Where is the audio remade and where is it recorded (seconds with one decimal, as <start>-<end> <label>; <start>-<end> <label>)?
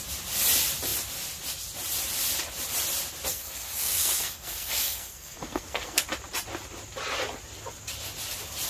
0.0-3.3 recorded; 3.3-6.0 remade; 6.0-8.7 recorded